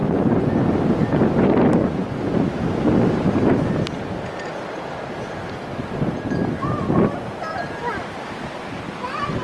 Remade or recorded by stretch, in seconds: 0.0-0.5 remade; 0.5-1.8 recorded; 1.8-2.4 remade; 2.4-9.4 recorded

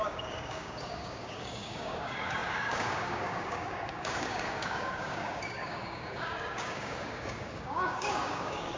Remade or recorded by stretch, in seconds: 0.0-8.8 remade

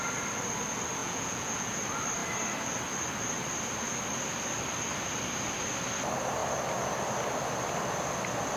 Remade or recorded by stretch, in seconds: 0.0-1.0 recorded; 1.0-1.8 remade; 1.8-8.6 recorded

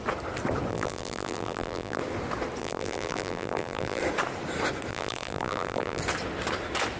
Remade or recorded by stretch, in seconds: 0.0-0.7 recorded; 0.7-2.0 remade; 2.0-2.6 recorded; 2.6-4.0 remade; 4.0-4.9 recorded; 4.9-6.0 remade; 6.0-7.0 recorded

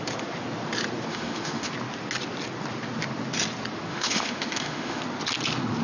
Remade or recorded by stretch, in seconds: 0.0-1.1 recorded; 1.1-1.7 remade; 1.7-3.9 recorded; 3.9-5.0 remade; 5.0-5.8 recorded